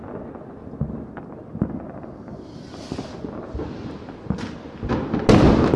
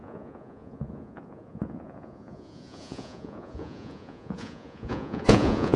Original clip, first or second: first